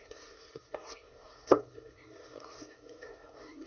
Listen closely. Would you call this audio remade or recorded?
remade